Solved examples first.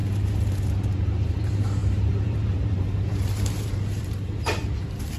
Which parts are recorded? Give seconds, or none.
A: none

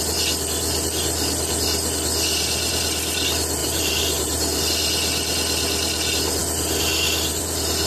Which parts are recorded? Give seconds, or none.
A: 0.0-3.6; 4.6-7.9